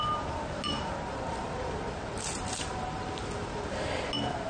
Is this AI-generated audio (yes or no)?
no